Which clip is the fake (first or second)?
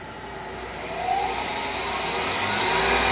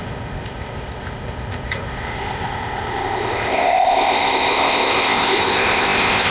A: second